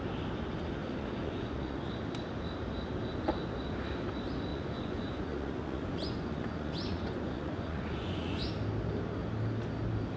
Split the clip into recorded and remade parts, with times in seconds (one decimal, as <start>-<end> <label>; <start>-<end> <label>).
0.0-0.8 recorded; 0.8-1.9 remade; 1.9-4.5 recorded; 4.5-8.5 remade; 8.5-10.2 recorded